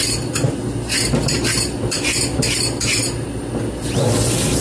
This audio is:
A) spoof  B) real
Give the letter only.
B